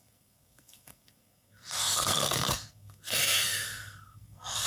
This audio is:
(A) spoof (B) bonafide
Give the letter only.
A